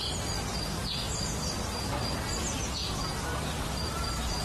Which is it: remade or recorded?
recorded